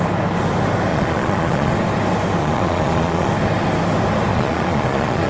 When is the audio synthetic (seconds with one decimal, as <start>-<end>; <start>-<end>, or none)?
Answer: 0.9-1.7; 2.4-3.3; 4.3-5.3